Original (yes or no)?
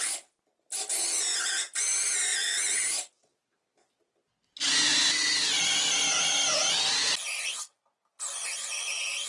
yes